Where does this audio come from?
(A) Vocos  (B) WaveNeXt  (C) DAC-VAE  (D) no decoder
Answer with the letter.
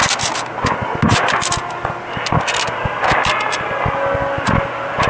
D